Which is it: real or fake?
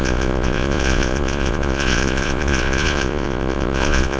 fake